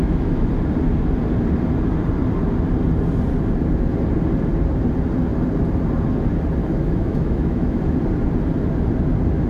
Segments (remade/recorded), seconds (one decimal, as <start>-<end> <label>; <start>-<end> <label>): 0.0-0.5 remade; 0.5-6.6 recorded; 6.6-7.8 remade; 7.8-9.5 recorded